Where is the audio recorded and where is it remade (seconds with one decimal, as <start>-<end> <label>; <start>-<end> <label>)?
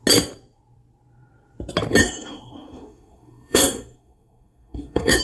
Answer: 0.0-2.0 recorded; 2.0-5.2 remade